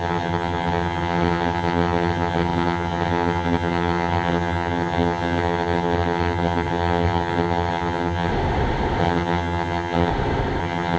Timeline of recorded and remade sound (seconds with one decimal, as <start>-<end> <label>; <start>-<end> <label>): 0.0-8.3 remade; 8.3-9.0 recorded; 9.0-10.1 remade; 10.1-10.6 recorded; 10.6-11.0 remade